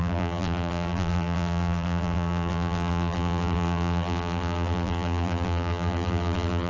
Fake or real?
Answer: fake